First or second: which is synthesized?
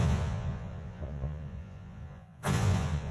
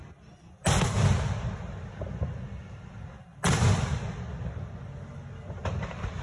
first